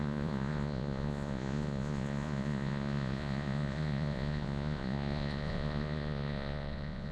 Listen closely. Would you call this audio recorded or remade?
remade